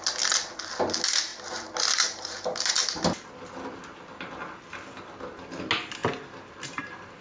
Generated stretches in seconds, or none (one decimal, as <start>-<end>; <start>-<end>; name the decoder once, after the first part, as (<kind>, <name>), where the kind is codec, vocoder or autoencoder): none